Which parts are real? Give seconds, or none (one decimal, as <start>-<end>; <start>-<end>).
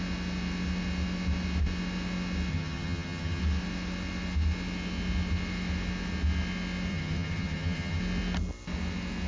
0.0-2.5; 3.4-6.9; 8.0-9.3